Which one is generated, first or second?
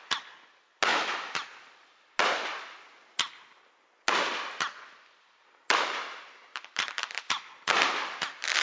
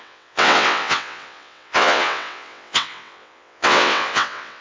second